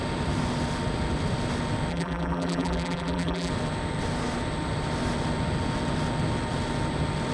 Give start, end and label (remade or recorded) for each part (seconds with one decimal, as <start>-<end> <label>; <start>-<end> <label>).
0.0-1.9 recorded; 1.9-3.5 remade; 3.5-7.3 recorded